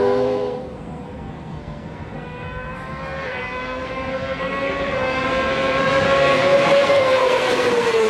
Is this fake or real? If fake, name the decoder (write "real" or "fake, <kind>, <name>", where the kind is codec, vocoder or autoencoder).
fake, codec, SNAC